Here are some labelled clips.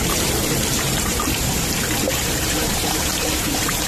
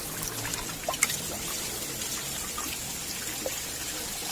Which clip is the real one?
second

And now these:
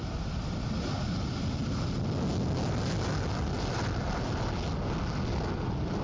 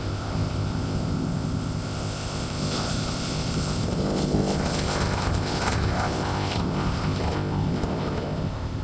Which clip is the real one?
first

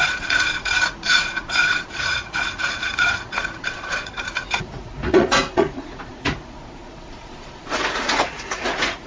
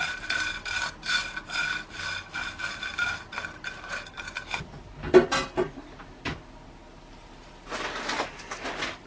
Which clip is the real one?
second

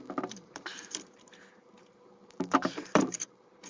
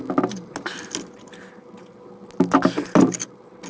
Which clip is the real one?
second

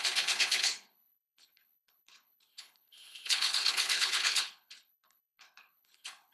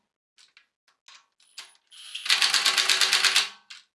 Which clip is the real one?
second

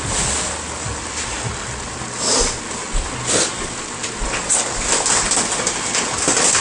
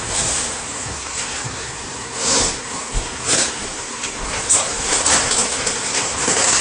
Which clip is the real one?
first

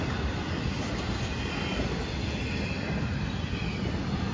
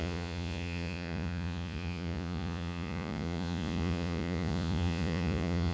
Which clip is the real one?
first